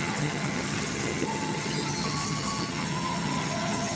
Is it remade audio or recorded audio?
remade